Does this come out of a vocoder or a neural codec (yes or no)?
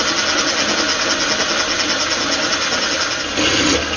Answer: no